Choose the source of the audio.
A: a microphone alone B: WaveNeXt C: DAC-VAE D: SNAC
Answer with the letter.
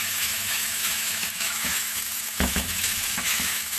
C